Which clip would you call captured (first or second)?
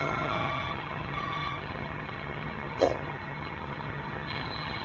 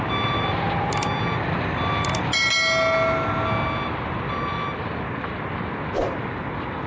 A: second